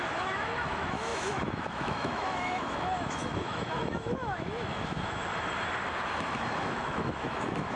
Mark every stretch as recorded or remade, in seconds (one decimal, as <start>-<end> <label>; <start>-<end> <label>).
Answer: 0.0-5.3 remade; 5.3-6.5 recorded; 6.5-7.8 remade